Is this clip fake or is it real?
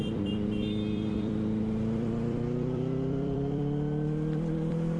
fake